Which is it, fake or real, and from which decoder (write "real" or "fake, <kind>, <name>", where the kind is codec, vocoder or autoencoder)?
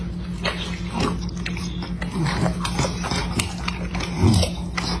real